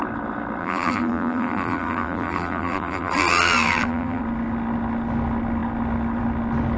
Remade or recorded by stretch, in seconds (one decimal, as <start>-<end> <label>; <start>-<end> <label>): 0.0-0.6 recorded; 0.6-4.2 remade; 4.2-6.8 recorded